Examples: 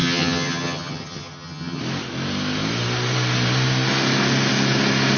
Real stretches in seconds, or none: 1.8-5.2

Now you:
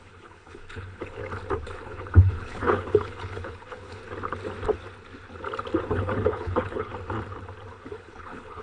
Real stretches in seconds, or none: 1.2-1.8; 4.0-5.8; 6.9-7.7

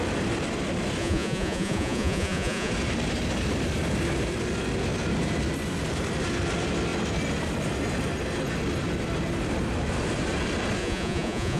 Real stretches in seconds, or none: 0.0-1.0; 2.7-10.8

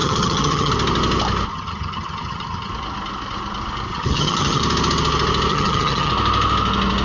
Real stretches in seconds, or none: 0.7-1.5; 2.7-3.9; 4.6-5.5; 6.1-7.0

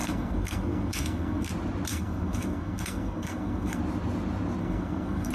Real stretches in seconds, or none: 1.5-1.9; 3.8-4.6

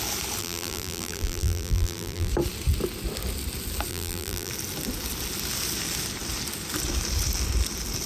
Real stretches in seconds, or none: 0.0-0.4; 2.3-3.9; 4.5-8.1